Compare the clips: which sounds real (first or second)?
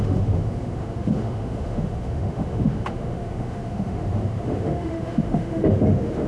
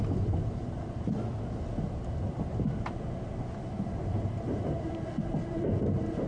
second